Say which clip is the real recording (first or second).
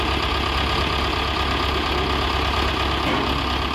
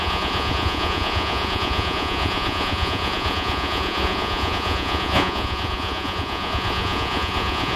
first